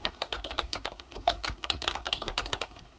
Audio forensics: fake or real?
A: fake